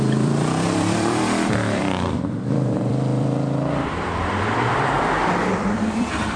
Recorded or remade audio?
remade